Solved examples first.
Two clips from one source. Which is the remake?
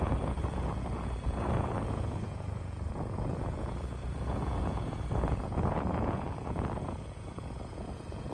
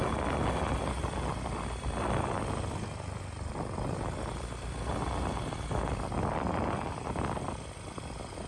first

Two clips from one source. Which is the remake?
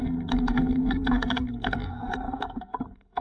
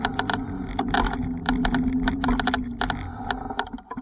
first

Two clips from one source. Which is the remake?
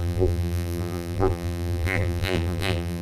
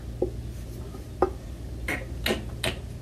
first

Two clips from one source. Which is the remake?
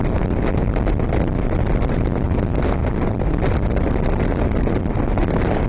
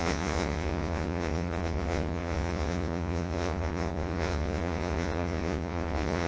second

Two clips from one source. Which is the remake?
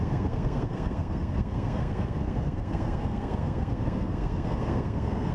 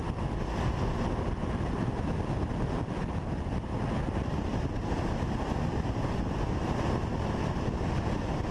first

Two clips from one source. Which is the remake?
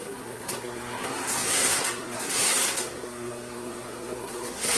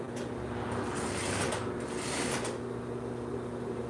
first